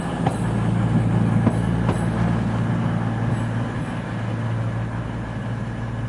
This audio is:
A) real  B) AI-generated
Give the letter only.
A